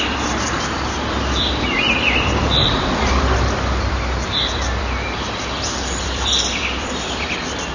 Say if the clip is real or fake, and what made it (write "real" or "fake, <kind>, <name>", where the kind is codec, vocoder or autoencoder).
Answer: fake, vocoder, BigVGAN v2